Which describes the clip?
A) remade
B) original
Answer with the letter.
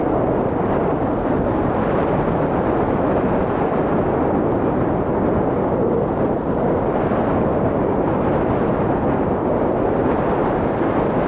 B